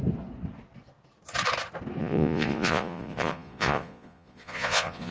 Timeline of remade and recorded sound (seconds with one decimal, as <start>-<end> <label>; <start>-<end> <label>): 0.0-2.0 recorded; 2.0-5.1 remade